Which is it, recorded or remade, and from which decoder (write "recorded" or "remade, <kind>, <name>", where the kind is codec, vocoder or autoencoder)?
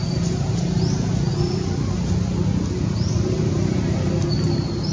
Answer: recorded